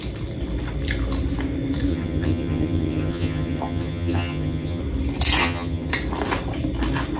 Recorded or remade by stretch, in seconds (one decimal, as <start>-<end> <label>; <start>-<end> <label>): 0.0-1.9 recorded; 1.9-4.8 remade; 4.8-5.4 recorded; 5.4-5.9 remade; 5.9-7.2 recorded